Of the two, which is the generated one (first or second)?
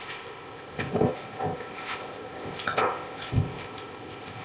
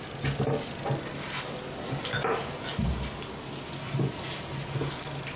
first